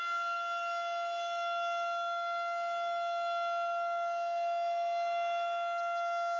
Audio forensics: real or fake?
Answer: real